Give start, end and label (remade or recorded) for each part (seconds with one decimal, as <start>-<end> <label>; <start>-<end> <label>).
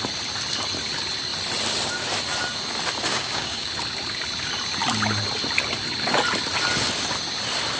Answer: 0.0-3.1 recorded; 3.1-3.7 remade; 3.7-7.8 recorded